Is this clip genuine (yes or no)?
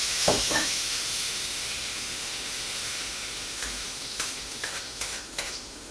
no